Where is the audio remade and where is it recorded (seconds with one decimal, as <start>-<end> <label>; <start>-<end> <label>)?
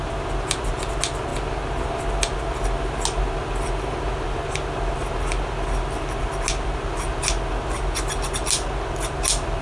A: 0.0-9.6 recorded